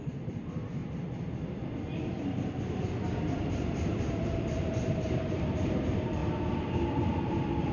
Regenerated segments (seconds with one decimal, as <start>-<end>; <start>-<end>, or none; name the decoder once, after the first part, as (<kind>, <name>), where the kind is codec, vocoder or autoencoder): 0.0-0.8 (vocoder, BigVGAN v2); 2.2-6.2; 6.8-7.7